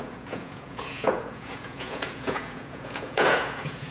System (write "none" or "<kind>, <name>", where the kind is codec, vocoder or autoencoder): vocoder, Vocos